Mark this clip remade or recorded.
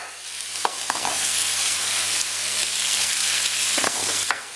remade